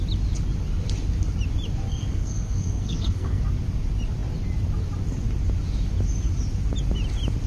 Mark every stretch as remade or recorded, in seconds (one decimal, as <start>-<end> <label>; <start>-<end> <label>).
0.0-1.9 recorded; 1.9-3.4 remade; 3.4-7.5 recorded